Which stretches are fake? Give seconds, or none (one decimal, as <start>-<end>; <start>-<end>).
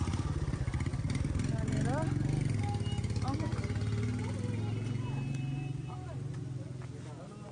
none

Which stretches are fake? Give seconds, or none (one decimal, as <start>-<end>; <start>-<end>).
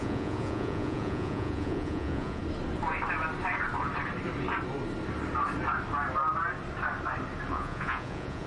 0.0-2.4; 7.5-8.5